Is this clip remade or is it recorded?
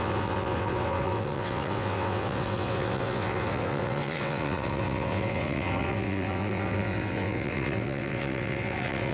remade